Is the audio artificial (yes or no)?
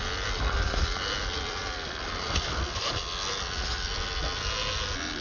no